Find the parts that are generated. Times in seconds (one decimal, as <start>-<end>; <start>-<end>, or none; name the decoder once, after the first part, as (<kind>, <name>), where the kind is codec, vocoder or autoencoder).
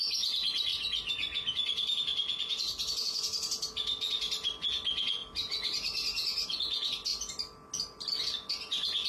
5.2-6.6 (vocoder, BigVGAN v2)